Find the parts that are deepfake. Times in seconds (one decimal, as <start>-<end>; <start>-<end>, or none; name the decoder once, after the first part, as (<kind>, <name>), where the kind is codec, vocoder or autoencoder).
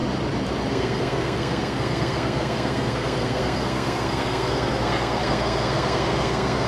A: 0.7-6.7 (codec, SNAC)